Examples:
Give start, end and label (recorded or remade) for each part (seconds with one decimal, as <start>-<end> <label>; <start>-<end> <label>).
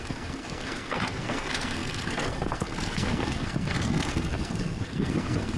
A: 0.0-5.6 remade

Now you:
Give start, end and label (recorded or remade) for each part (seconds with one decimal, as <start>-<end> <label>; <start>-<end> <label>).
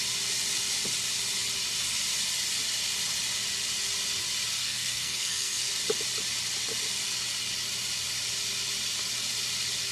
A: 0.0-4.6 recorded; 4.6-5.7 remade; 5.7-9.9 recorded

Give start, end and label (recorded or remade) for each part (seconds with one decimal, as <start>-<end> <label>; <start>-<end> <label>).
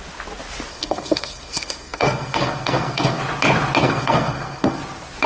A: 0.0-0.7 recorded; 0.7-3.2 remade; 3.2-3.8 recorded; 3.8-4.8 remade; 4.8-5.3 recorded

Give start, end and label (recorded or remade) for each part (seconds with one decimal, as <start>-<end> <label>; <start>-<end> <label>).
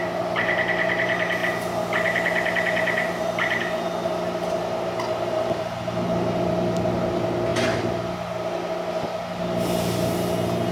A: 0.0-10.7 recorded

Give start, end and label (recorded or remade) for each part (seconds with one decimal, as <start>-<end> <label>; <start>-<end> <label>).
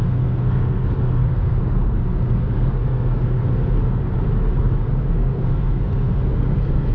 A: 0.0-3.4 remade; 3.4-4.8 recorded; 4.8-6.9 remade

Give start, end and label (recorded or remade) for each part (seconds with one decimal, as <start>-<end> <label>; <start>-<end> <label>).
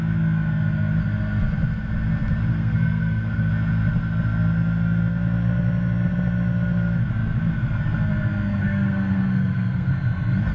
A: 0.0-2.5 recorded; 2.5-3.5 remade; 3.5-8.6 recorded; 8.6-9.9 remade; 9.9-10.5 recorded